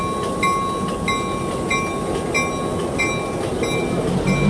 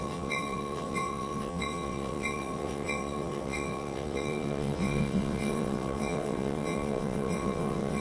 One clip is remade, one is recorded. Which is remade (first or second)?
second